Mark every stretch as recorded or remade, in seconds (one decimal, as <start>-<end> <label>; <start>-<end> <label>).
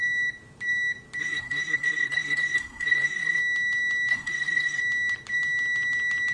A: 0.0-1.2 recorded; 1.2-3.4 remade; 3.4-4.1 recorded; 4.1-4.8 remade; 4.8-6.3 recorded